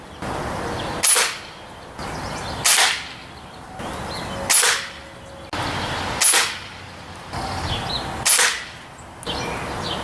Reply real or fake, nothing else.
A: real